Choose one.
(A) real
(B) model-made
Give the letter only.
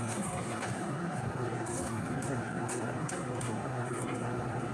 B